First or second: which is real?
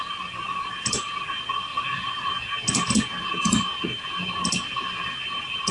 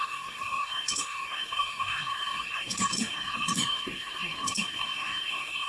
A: first